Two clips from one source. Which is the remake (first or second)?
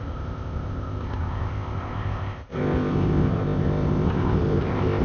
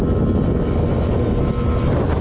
first